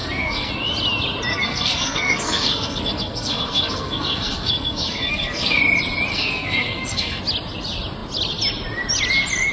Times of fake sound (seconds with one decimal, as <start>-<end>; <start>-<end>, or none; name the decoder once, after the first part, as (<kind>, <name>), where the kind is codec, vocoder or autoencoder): 0.0-0.5 (codec, SNAC); 1.3-5.6; 6.1-7.2